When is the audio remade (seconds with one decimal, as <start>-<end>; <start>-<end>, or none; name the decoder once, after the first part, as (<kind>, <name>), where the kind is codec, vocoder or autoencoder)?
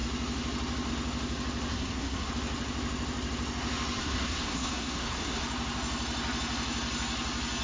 1.7-2.3 (codec, SNAC); 4.0-5.4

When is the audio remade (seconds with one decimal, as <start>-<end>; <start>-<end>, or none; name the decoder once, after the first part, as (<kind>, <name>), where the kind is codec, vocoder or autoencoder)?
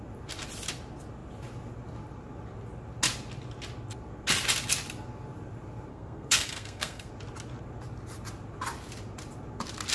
5.9-7.1 (codec, SNAC)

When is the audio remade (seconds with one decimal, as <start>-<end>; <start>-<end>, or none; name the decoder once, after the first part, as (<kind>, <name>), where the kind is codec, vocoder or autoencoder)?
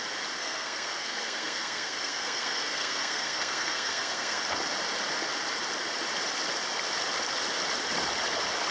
0.4-4.4 (codec, SNAC)